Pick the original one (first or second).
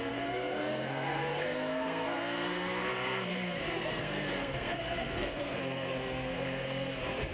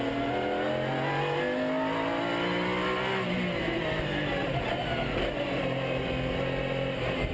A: second